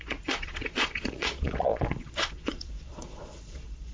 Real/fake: fake